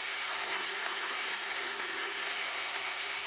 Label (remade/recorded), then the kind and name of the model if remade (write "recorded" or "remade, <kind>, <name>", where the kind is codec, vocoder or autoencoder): remade, codec, SNAC